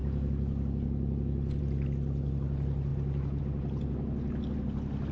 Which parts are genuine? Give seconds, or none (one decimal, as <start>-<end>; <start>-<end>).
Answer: 0.0-5.1